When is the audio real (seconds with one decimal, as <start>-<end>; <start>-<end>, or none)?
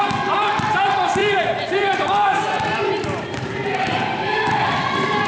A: 0.0-1.2; 4.4-5.3